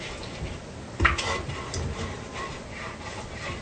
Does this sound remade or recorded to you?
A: remade